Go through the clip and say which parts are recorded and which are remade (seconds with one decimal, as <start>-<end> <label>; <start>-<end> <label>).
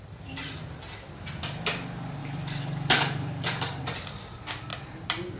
0.0-2.2 recorded; 2.2-3.8 remade; 3.8-5.4 recorded